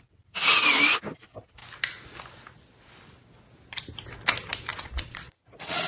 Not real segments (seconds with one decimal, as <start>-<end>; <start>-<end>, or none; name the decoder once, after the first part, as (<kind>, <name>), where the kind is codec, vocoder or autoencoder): 4.7-5.9 (vocoder, Vocos)